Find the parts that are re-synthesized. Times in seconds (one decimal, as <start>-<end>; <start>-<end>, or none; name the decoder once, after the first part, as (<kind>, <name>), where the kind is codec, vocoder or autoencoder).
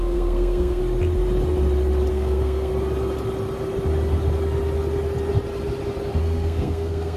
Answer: 0.0-0.8 (codec, SNAC); 2.1-2.7; 6.2-7.2